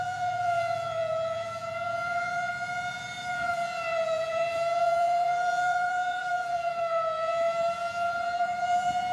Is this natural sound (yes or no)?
no